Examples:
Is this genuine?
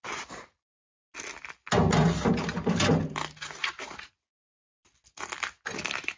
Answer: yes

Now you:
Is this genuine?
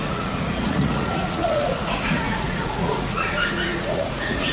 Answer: no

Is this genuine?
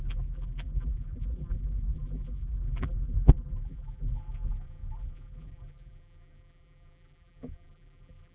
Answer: no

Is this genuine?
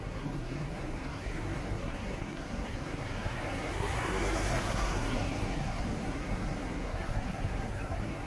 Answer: no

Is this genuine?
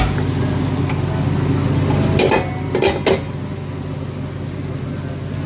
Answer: yes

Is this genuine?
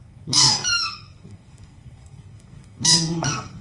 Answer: no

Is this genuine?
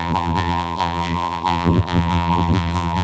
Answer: no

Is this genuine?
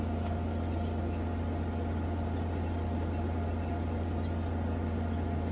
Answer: yes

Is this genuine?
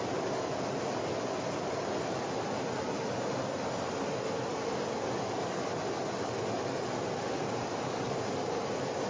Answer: yes